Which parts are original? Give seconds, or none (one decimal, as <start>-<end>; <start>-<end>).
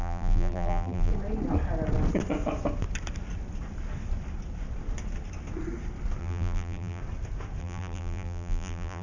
1.1-6.2; 7.0-7.6